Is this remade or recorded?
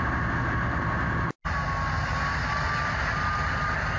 recorded